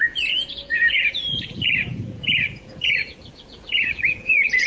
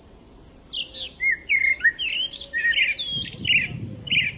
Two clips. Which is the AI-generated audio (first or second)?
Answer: first